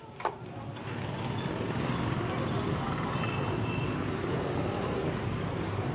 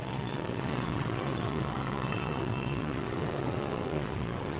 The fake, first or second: second